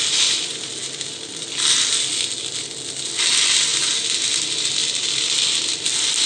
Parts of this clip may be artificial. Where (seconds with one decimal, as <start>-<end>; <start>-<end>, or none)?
none